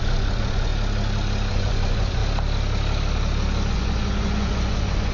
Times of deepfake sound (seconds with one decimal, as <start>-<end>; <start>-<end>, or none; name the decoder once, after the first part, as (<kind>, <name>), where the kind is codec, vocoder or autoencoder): 0.0-0.7 (vocoder, Vocos); 1.5-2.2; 3.7-5.1